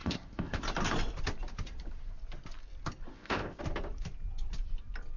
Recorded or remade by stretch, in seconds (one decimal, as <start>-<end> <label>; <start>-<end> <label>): 0.0-0.6 remade; 0.6-3.1 recorded; 3.1-3.6 remade; 3.6-5.2 recorded